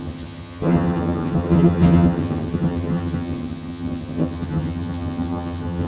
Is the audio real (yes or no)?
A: no